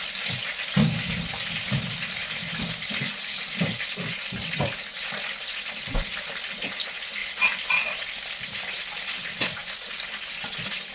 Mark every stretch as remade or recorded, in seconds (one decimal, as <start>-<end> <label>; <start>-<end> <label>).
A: 0.0-10.9 recorded